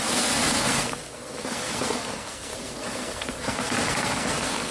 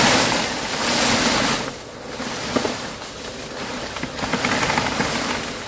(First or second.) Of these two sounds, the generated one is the first